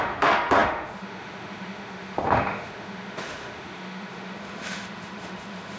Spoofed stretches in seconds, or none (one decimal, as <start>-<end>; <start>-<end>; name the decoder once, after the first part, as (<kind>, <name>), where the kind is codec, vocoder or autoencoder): 0.0-5.8 (autoencoder, DAC-VAE)